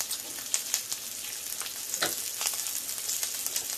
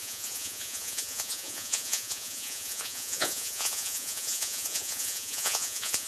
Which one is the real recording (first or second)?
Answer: first